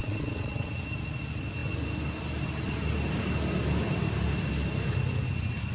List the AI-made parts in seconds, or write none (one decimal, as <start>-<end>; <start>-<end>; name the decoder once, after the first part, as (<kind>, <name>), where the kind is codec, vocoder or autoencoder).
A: 0.0-0.7 (vocoder, WaveNeXt)